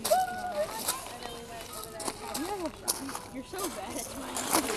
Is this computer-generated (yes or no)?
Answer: no